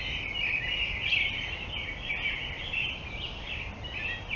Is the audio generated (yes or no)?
no